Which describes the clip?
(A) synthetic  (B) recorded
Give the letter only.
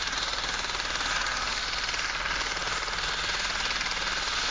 B